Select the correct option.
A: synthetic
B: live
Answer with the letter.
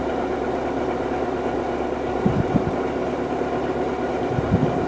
B